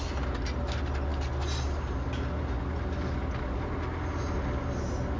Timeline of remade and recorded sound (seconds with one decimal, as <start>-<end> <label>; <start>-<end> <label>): 0.0-5.2 recorded